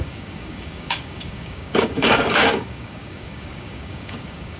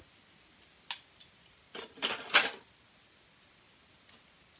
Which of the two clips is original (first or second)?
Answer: second